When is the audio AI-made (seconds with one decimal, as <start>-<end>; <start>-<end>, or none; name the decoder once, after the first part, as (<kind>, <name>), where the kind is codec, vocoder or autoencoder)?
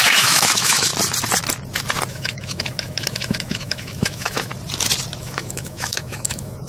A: 0.0-0.9 (autoencoder, DAC-VAE); 2.1-4.5; 5.2-6.7